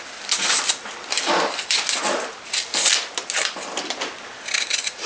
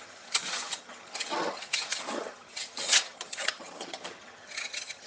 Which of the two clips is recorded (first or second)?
first